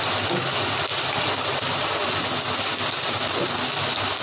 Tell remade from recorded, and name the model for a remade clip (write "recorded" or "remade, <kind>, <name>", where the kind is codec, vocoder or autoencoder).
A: recorded